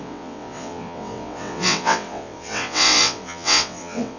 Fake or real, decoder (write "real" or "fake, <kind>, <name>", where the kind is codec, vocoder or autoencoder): fake, vocoder, WaveNeXt